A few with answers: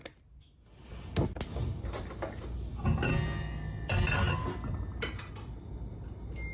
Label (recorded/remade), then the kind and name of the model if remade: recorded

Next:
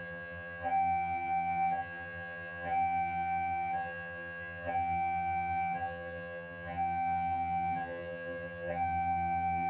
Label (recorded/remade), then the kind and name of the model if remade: remade, vocoder, HiFi-GAN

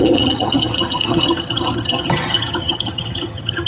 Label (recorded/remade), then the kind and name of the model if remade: remade, vocoder, HiFi-GAN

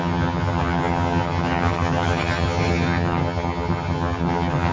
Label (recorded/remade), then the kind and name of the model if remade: remade, vocoder, HiFi-GAN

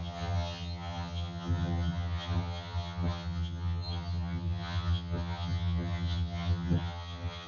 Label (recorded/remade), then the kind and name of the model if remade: remade, vocoder, HiFi-GAN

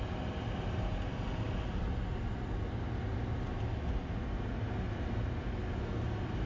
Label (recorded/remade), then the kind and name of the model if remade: recorded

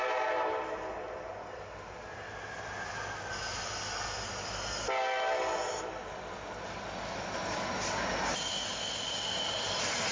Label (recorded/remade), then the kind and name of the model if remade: recorded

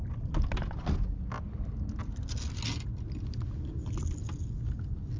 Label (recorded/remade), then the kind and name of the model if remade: recorded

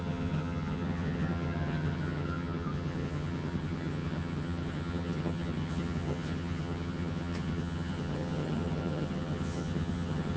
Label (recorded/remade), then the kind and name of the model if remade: remade, vocoder, HiFi-GAN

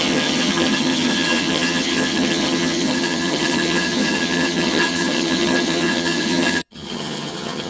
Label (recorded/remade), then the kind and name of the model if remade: remade, vocoder, HiFi-GAN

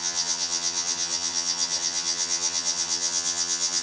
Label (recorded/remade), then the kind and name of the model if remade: remade, vocoder, HiFi-GAN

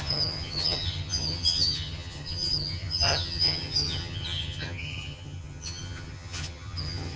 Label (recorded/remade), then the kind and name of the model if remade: remade, vocoder, HiFi-GAN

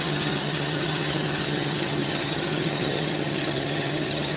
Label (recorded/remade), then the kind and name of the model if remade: remade, vocoder, HiFi-GAN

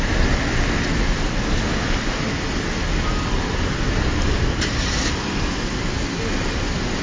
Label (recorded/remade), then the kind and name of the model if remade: recorded